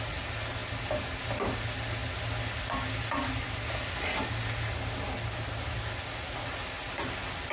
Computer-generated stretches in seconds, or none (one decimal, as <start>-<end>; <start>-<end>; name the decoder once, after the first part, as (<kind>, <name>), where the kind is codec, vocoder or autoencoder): none